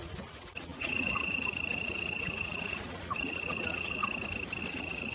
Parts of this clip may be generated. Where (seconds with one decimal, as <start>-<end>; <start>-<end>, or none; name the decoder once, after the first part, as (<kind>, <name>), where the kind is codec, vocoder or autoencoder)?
0.0-4.0 (vocoder, Vocos); 4.6-5.1